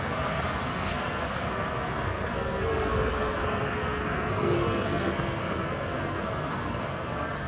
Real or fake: fake